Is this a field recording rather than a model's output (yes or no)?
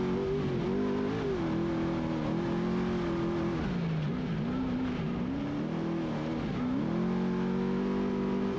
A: yes